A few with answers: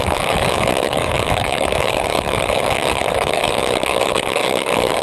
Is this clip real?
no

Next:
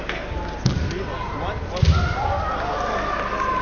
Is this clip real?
yes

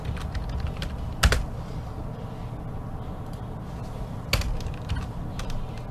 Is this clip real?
yes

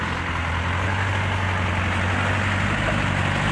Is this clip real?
yes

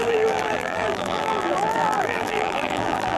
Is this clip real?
no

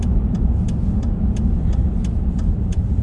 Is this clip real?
no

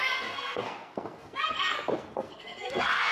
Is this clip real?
no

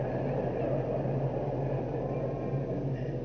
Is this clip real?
yes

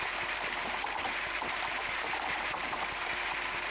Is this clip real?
no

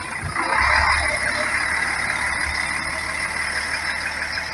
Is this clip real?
yes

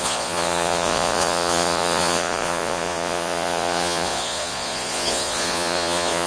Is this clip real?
no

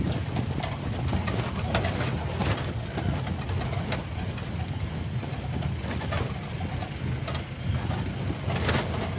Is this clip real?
yes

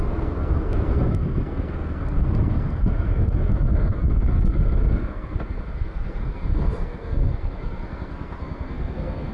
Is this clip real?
no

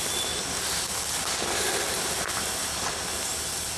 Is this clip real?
yes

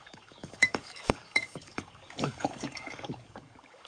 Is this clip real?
no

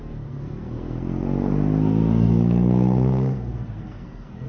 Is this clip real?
no